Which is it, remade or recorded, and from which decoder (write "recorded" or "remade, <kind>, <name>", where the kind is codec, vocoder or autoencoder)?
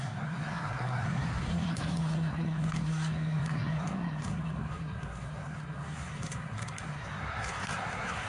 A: remade, codec, SNAC